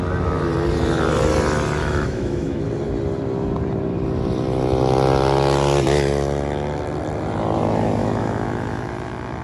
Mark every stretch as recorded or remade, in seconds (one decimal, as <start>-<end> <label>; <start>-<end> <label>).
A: 0.0-1.8 recorded; 1.8-2.6 remade; 2.6-8.0 recorded; 8.0-8.9 remade; 8.9-9.4 recorded